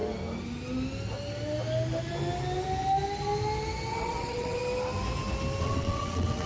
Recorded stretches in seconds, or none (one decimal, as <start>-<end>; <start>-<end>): 0.0-3.9; 4.6-5.6